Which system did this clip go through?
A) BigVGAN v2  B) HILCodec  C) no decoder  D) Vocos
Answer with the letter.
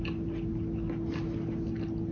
C